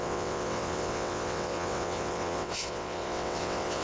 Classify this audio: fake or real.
fake